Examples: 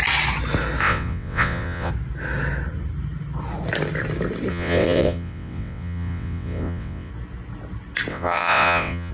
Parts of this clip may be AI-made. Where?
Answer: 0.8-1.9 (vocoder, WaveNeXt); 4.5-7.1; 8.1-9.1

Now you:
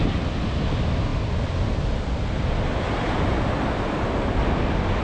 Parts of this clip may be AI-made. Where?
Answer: none

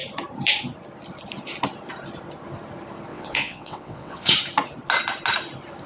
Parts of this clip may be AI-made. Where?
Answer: 3.1-4.3 (vocoder, WaveNeXt)

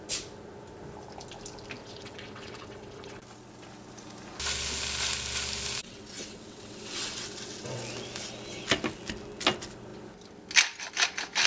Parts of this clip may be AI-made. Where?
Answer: 1.8-3.2 (vocoder, WaveNeXt); 5.8-7.8

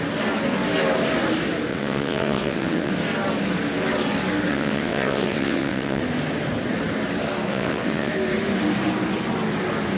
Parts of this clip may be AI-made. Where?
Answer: 1.7-2.9 (vocoder, WaveNeXt); 4.5-6.0; 7.5-8.1

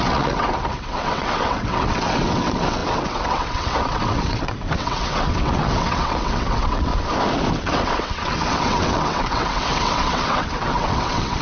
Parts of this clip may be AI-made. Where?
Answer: 0.0-6.9 (vocoder, WaveNeXt); 7.5-11.4

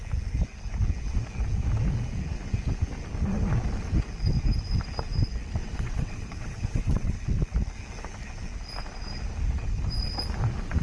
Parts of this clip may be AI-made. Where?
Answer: 5.6-7.2 (vocoder, WaveNeXt)

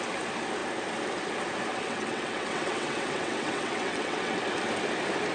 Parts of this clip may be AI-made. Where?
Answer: 1.7-4.4 (vocoder, WaveNeXt)